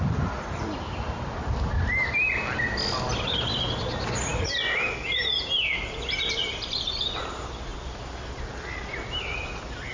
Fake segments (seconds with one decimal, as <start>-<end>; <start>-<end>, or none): 7.7-8.4